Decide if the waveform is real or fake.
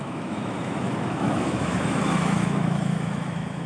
fake